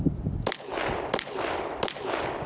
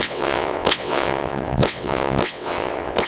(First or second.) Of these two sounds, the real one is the first